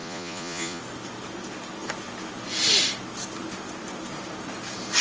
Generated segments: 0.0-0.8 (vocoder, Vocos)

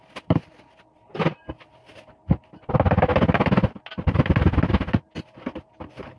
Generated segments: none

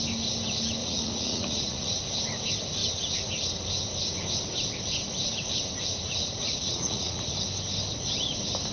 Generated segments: 0.8-2.0 (vocoder, Vocos); 6.4-7.3